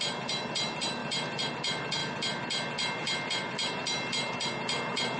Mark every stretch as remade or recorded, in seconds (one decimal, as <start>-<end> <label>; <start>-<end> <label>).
0.0-1.0 recorded; 1.0-1.5 remade; 1.5-5.2 recorded